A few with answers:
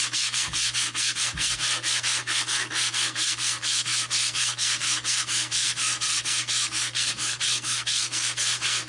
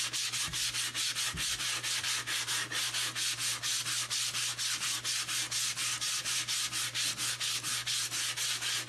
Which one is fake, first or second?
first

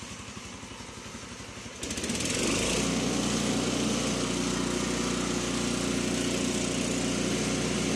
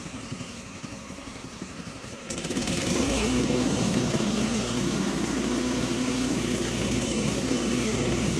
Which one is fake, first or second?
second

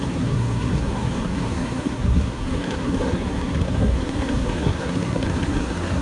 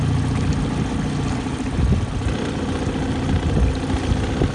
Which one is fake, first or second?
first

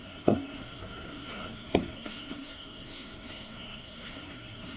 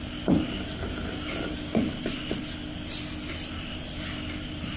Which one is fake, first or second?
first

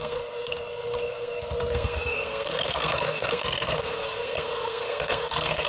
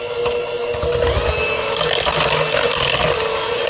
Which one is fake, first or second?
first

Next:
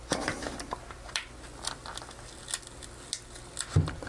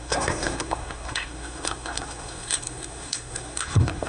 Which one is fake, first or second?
second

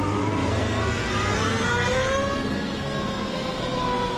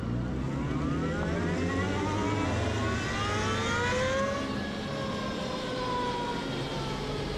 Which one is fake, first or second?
first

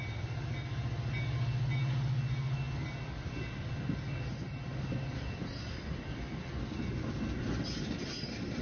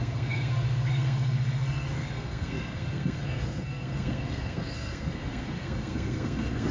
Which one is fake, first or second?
second